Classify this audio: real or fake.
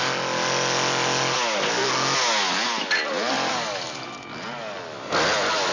real